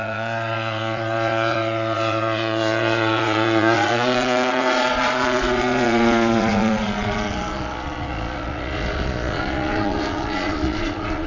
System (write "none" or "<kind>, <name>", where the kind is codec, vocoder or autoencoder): vocoder, Vocos